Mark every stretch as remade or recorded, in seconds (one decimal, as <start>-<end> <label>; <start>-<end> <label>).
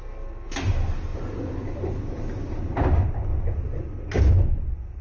0.0-5.0 recorded